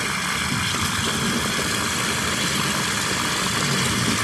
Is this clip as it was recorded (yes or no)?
yes